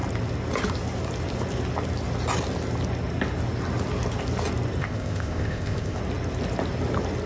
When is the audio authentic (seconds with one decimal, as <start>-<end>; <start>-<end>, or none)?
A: 0.0-4.8; 6.0-7.3